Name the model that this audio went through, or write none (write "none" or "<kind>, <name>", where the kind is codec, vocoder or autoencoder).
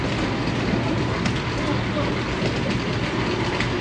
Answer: none